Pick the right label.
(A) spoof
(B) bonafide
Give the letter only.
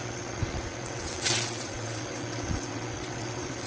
A